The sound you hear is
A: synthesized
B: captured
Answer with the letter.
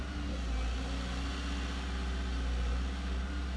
B